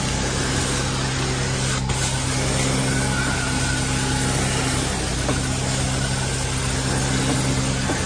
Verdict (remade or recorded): recorded